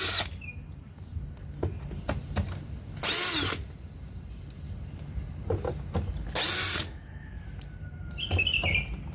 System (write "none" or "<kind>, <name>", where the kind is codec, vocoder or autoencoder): none